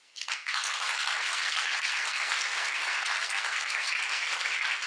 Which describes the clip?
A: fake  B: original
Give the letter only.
A